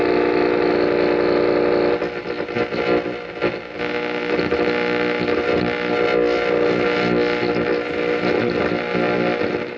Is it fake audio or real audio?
real